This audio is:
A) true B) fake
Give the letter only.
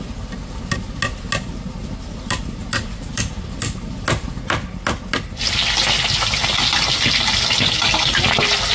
A